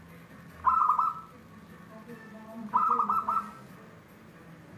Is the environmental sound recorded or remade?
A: recorded